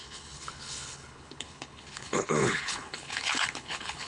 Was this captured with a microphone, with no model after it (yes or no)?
no